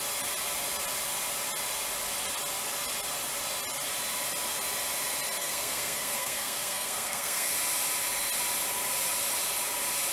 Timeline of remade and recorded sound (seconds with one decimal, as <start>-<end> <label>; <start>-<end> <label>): 0.0-5.4 recorded; 5.4-7.5 remade; 7.5-10.1 recorded